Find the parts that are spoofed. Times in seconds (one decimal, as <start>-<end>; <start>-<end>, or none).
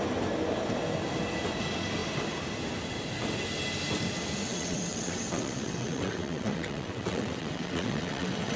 4.5-8.6